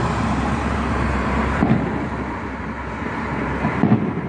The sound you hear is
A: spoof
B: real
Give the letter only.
A